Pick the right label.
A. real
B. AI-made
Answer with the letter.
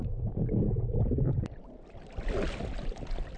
A